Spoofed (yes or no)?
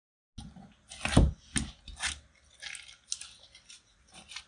no